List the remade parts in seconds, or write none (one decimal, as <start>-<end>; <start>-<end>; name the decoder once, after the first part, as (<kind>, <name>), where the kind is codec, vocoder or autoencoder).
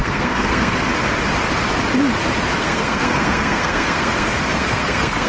0.0-0.9 (codec, SNAC); 2.6-5.3